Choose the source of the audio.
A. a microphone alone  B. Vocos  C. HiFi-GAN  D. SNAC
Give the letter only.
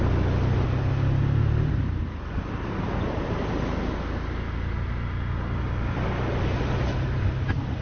A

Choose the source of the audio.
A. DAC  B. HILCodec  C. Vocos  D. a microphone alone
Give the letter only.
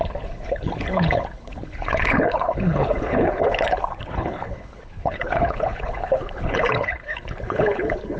B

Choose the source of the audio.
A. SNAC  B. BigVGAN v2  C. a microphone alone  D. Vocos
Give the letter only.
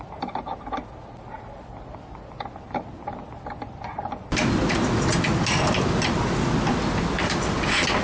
C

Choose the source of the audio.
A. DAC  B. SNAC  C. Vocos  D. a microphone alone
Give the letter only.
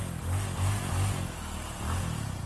D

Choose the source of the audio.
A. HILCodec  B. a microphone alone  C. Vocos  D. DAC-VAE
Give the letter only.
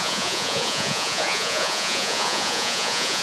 C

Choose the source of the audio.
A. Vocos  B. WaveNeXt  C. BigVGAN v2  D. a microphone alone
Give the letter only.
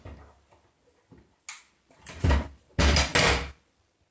D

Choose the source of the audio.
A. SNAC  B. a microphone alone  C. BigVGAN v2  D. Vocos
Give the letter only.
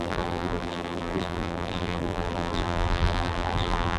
C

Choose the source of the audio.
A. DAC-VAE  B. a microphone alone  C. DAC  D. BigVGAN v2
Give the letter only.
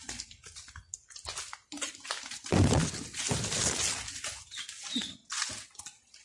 B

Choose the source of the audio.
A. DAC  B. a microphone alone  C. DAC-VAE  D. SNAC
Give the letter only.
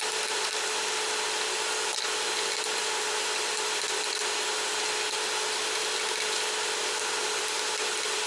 B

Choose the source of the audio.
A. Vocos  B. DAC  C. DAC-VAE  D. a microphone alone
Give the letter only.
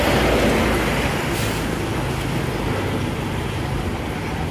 D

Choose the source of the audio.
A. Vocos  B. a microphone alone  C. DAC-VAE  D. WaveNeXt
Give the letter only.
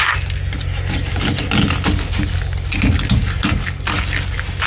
B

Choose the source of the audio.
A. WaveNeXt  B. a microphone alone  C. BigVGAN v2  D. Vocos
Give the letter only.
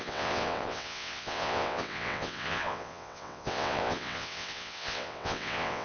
A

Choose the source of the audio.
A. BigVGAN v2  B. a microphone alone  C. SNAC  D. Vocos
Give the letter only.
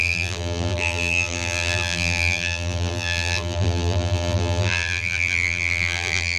A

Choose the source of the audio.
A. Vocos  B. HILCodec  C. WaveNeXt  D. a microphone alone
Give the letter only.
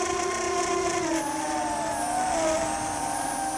D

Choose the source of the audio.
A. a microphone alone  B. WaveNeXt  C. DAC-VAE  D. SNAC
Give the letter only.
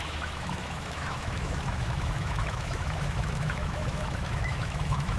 C